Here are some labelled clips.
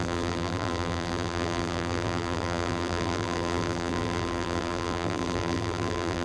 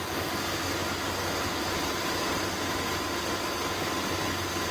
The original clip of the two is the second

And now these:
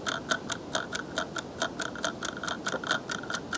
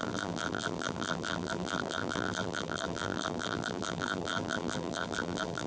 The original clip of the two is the first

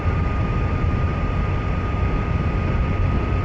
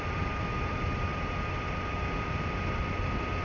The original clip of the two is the second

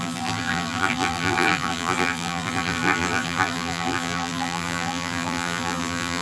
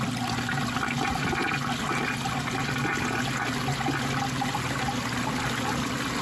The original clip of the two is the second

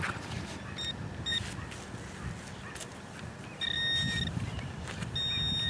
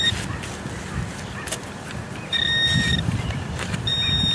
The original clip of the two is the first